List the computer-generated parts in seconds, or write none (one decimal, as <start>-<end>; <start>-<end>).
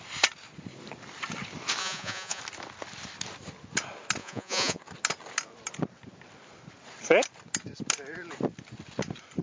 1.8-2.4; 4.2-4.8